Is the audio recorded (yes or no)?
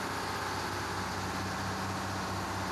yes